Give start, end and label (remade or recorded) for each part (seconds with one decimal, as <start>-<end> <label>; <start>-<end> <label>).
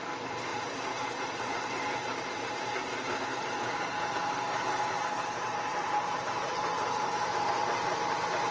0.0-0.5 recorded; 0.5-2.5 remade; 2.5-3.3 recorded; 3.3-7.3 remade; 7.3-8.5 recorded